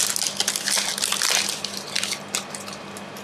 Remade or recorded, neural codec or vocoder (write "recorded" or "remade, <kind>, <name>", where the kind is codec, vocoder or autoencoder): recorded